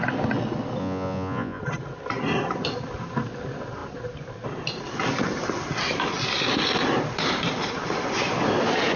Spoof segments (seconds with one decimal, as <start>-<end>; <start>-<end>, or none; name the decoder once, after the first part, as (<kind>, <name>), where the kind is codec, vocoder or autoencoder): 0.8-1.6 (vocoder, Vocos)